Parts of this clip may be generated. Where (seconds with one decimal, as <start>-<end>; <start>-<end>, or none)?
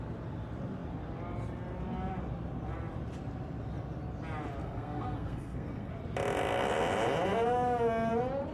4.6-5.9